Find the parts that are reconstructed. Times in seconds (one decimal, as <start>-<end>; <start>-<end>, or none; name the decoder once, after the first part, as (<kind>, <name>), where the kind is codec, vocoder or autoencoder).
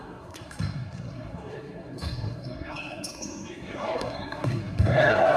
0.0-5.4 (codec, SNAC)